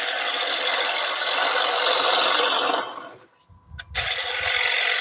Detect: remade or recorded recorded